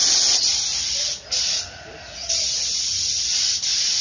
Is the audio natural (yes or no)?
yes